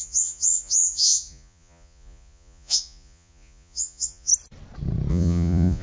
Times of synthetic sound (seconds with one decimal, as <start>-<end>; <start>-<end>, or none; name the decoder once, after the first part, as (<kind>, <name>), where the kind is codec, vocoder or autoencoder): 0.0-4.3 (vocoder, Vocos); 5.1-5.8